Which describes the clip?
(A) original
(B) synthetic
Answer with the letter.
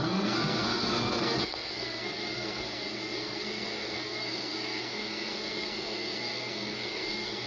B